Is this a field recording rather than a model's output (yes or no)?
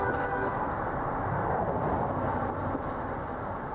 yes